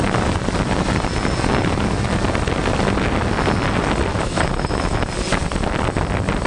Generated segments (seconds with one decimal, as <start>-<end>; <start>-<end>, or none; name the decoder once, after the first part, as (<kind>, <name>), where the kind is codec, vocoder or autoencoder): 4.1-5.1 (autoencoder, DAC-VAE)

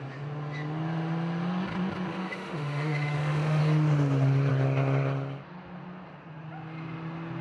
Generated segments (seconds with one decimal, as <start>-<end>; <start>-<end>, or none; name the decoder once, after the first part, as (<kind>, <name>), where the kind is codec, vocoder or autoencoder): 2.1-3.6 (autoencoder, DAC-VAE)